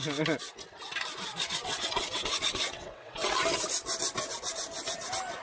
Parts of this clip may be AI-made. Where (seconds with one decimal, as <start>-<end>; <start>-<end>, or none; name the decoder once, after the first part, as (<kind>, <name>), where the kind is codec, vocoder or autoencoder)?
1.6-3.3 (vocoder, WaveNeXt)

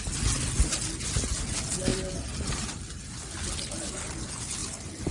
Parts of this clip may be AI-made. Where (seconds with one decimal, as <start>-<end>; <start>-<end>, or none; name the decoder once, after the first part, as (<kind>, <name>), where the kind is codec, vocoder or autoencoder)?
1.9-3.3 (vocoder, BigVGAN v2)

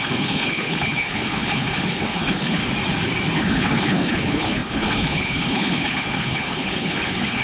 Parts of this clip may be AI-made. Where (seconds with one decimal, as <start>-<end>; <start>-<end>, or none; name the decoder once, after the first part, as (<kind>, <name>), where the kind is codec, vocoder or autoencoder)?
0.0-2.6 (codec, HILCodec); 3.3-7.4

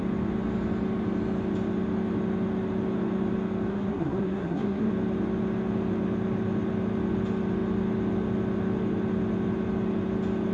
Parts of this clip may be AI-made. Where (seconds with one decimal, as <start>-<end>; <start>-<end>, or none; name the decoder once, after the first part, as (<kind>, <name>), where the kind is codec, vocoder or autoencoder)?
3.7-4.9 (codec, SNAC)

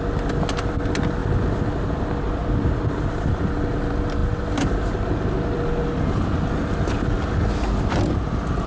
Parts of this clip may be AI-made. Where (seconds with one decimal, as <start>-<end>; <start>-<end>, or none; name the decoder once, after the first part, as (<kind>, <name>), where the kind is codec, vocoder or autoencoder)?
2.4-3.4 (vocoder, BigVGAN v2)